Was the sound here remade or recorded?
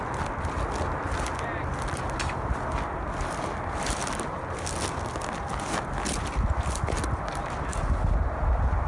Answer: recorded